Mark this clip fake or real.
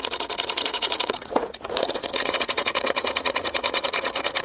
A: fake